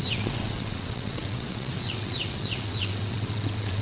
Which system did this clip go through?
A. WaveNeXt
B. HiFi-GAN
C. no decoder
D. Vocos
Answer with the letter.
A